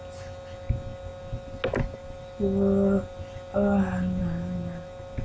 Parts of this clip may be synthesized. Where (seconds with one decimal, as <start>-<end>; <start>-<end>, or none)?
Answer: none